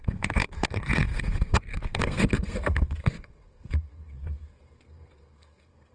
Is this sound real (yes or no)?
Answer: no